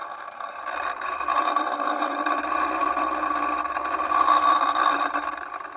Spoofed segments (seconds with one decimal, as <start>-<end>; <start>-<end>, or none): 0.0-2.4; 2.8-5.8

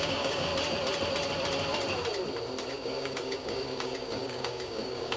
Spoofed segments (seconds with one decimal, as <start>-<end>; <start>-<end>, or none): 0.0-0.5; 2.7-5.2

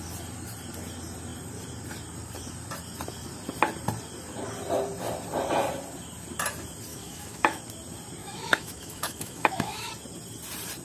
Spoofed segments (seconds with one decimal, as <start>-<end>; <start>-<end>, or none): 6.9-7.6; 8.2-9.9

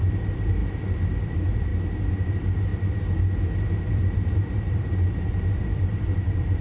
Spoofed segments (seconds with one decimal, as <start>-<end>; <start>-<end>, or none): 0.0-0.6; 1.2-1.7; 2.3-2.7; 3.9-6.6

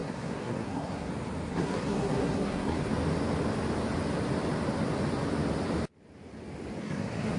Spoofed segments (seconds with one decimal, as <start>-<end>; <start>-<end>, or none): 0.0-1.1; 1.5-2.9; 6.8-7.4

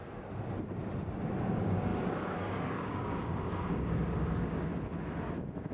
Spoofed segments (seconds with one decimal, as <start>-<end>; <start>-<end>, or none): 1.5-4.7

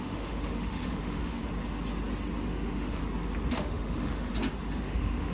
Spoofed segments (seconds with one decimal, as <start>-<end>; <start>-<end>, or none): 0.0-1.4; 2.5-3.0; 3.5-4.3; 4.8-5.3